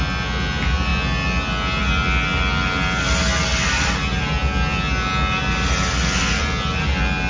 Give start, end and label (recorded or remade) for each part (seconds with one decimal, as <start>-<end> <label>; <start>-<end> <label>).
0.0-7.3 recorded